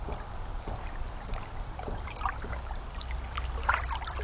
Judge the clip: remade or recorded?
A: recorded